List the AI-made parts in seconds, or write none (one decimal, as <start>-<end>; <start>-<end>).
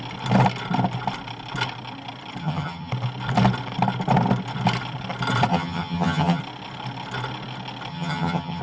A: 2.4-2.9; 5.5-6.4; 7.9-8.6